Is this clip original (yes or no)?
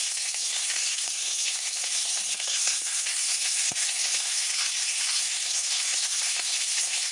no